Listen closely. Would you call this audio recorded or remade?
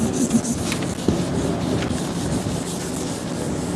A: recorded